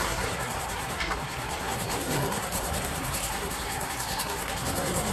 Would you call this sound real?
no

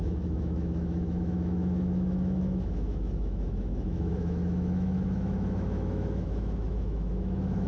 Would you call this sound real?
no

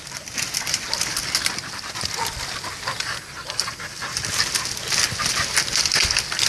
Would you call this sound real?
yes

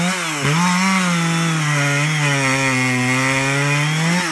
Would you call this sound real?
yes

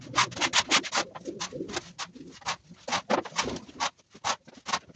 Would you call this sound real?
yes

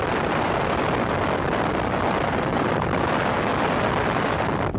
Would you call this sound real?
no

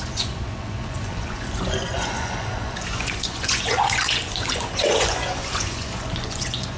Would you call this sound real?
no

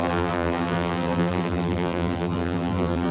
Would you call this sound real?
no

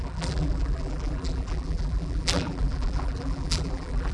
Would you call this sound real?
no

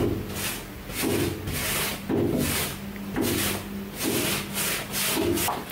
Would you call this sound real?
yes